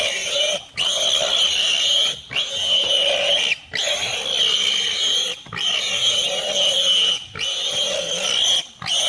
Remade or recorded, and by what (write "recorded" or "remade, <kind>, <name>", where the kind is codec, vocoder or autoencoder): recorded